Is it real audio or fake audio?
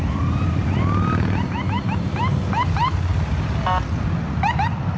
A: real